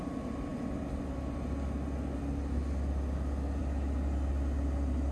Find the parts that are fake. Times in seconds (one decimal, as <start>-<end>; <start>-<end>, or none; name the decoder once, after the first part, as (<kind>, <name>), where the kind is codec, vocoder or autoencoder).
none